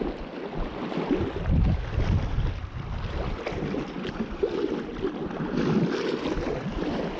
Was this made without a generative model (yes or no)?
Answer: yes